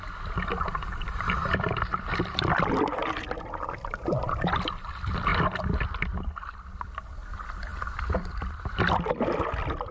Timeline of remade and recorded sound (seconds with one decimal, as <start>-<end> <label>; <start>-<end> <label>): 0.0-0.9 recorded; 0.9-4.3 remade; 4.3-7.7 recorded; 7.7-9.4 remade; 9.4-9.9 recorded